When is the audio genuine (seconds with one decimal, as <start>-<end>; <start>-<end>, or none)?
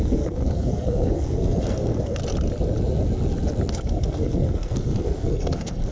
2.2-3.7